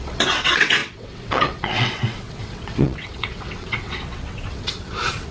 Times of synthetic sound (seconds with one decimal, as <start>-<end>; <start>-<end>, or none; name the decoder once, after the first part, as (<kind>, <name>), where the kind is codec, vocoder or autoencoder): 0.0-5.3 (vocoder, WaveNeXt)